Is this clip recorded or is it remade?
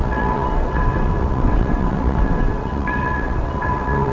remade